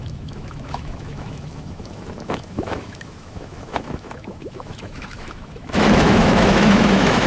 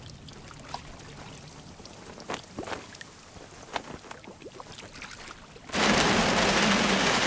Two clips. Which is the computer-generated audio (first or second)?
first